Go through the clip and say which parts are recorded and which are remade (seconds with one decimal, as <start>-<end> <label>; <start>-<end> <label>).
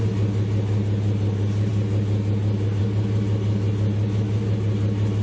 0.0-5.2 recorded